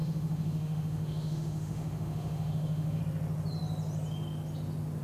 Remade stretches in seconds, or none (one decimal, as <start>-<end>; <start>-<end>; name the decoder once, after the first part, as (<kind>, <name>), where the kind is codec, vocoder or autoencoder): 0.0-3.0 (autoencoder, DAC-VAE)